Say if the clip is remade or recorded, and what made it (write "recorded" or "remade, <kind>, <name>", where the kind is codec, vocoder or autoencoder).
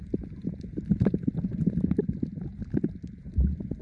recorded